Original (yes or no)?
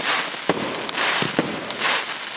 yes